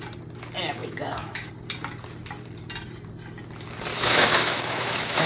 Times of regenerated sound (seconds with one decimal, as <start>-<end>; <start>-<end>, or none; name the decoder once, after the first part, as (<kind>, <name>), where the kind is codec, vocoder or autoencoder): 0.8-1.5 (autoencoder, DAC-VAE); 3.9-5.3